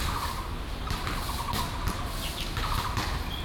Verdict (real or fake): real